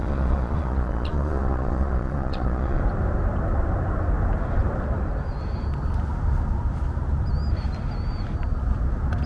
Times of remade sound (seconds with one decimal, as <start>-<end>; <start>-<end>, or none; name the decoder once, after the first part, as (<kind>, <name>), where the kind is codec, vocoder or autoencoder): 0.0-2.8 (vocoder, Vocos)